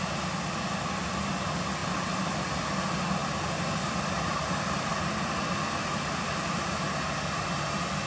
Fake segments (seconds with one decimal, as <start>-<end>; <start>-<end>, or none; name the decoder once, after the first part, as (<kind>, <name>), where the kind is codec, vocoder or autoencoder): 1.8-2.4 (vocoder, BigVGAN v2); 3.2-5.0